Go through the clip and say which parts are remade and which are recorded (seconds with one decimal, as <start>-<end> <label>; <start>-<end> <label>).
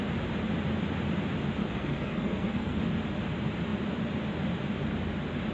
0.0-1.6 recorded; 1.6-2.8 remade; 2.8-5.5 recorded